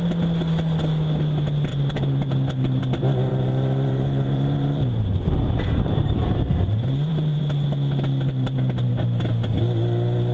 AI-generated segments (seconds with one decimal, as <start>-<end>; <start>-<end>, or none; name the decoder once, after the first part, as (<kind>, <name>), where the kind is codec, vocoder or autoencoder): 1.7-2.8 (vocoder, BigVGAN v2); 3.3-7.4; 8.3-8.9